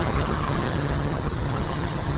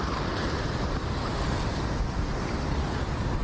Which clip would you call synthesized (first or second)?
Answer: first